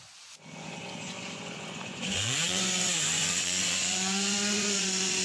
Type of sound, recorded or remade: remade